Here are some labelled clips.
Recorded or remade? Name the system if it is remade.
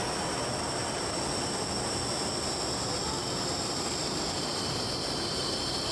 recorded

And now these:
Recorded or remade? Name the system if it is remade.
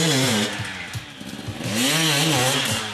recorded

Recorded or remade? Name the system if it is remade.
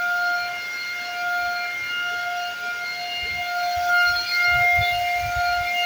recorded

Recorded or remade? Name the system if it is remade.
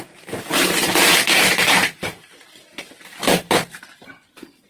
remade, vocoder, BigVGAN v2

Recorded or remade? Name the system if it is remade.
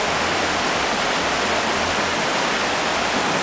recorded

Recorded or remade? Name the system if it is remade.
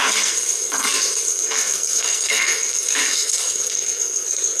remade, codec, SNAC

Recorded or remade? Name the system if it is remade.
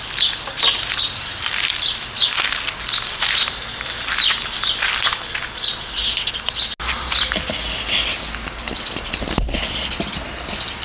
recorded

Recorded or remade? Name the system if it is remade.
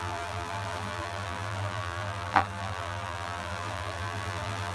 remade, vocoder, BigVGAN v2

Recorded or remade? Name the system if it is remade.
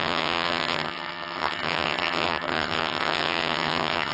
remade, vocoder, HiFi-GAN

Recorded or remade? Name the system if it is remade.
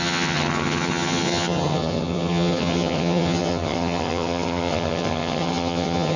remade, vocoder, HiFi-GAN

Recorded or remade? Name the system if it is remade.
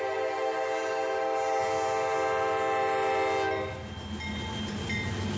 recorded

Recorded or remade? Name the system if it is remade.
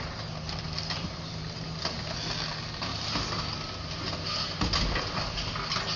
recorded